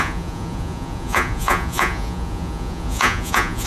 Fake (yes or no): yes